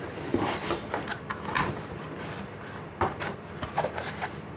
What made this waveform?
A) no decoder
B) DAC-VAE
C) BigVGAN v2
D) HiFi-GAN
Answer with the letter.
A